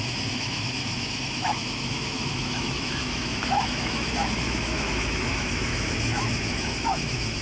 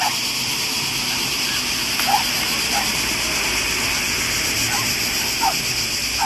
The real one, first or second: second